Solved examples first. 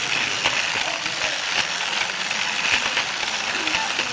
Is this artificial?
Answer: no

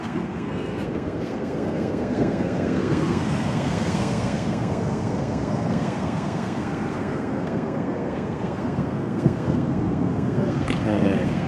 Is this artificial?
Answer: yes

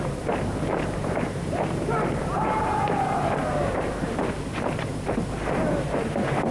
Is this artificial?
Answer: yes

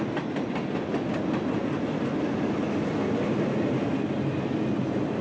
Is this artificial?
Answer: no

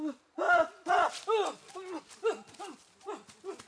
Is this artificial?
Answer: no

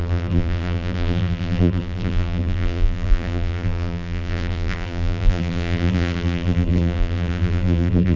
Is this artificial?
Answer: yes